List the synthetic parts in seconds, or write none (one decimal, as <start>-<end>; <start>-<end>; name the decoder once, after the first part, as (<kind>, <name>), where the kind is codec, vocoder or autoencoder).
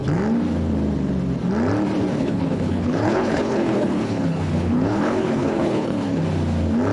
2.1-6.2 (codec, HILCodec)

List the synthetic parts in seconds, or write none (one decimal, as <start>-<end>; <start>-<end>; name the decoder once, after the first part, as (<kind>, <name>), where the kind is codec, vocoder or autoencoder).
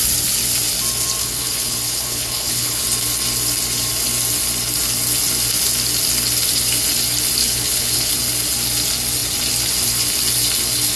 1.2-2.8 (codec, HILCodec); 7.4-8.1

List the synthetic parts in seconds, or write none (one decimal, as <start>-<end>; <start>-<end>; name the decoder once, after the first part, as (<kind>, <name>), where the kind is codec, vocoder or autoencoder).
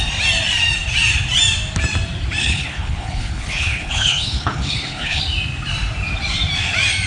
2.4-5.2 (codec, HILCodec)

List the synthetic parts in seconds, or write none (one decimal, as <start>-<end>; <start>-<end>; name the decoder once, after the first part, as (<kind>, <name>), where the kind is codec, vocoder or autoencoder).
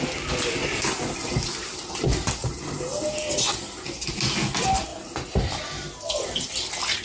none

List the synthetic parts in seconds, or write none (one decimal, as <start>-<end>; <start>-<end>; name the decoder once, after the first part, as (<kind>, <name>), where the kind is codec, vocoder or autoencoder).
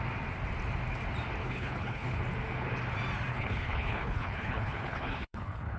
1.4-2.2 (codec, HILCodec); 3.3-5.8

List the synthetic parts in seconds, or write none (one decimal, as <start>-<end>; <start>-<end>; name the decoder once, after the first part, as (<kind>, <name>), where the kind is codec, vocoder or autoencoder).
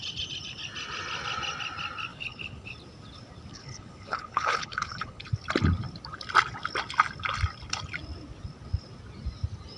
2.1-2.7 (codec, HILCodec); 3.5-5.2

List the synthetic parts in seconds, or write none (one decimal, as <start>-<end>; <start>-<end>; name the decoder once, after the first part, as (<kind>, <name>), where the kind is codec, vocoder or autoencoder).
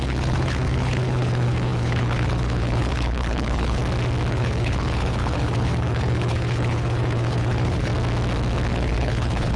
0.0-3.8 (codec, HILCodec); 4.3-7.9; 8.7-9.6